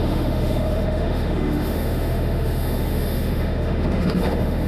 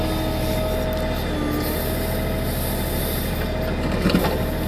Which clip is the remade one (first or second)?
first